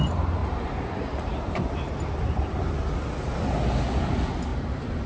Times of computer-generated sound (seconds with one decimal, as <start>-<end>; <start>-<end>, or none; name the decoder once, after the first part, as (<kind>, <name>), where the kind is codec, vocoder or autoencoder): 0.4-1.9 (vocoder, BigVGAN v2); 4.5-5.1